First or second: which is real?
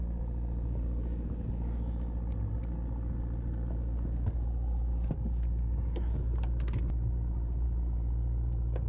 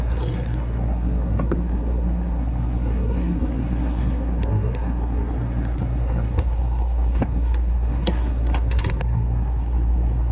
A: first